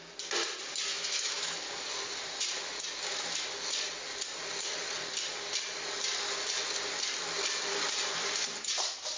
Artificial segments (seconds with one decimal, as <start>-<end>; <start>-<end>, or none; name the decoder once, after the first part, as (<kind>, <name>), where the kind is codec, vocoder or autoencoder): 0.9-1.6 (autoencoder, DAC-VAE)